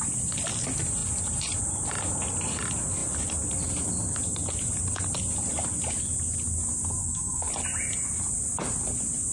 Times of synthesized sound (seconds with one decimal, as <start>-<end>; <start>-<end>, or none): 7.0-7.5

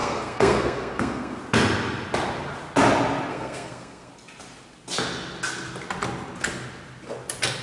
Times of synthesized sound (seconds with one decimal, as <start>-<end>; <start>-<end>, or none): 0.0-1.4; 3.3-4.1

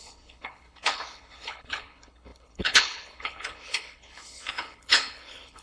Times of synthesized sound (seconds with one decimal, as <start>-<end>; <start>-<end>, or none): 0.0-5.6